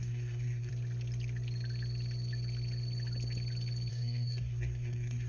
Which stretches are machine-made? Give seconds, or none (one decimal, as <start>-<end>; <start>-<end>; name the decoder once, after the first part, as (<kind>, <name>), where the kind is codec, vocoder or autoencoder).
0.0-0.7 (codec, SNAC); 3.9-5.3